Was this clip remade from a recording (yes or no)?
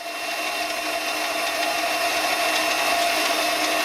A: no